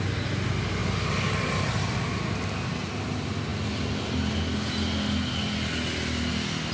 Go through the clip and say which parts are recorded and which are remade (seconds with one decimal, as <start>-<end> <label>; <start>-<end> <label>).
0.0-6.7 recorded